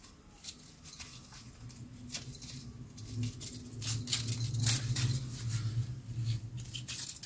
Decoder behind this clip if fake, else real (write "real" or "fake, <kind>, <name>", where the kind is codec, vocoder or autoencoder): real